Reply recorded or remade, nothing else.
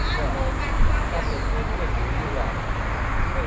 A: recorded